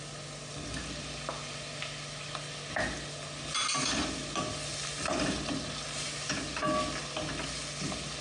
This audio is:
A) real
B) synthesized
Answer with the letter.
A